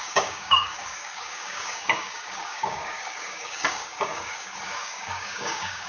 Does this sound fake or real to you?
fake